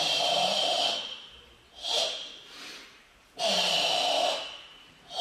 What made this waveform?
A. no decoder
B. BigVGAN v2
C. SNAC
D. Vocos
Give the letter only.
B